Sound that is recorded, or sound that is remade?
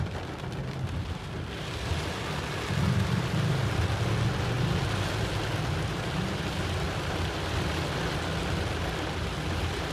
recorded